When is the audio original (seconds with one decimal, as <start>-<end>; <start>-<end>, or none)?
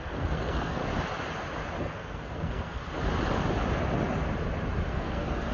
0.8-1.8; 2.8-4.9